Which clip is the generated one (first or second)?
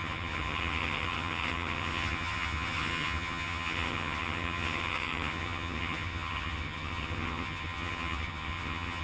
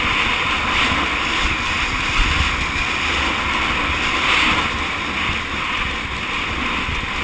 first